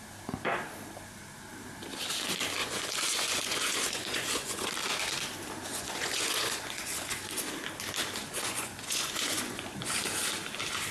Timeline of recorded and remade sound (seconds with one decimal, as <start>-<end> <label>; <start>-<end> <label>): 0.0-2.6 recorded; 2.6-4.7 remade; 4.7-5.7 recorded; 5.7-7.1 remade; 7.1-8.2 recorded; 8.2-10.0 remade; 10.0-10.9 recorded